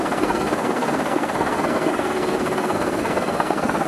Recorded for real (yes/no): no